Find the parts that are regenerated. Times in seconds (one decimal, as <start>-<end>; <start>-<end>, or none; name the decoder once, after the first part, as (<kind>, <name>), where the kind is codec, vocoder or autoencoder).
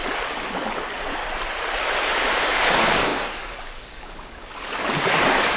0.0-1.2 (codec, DAC); 2.4-5.6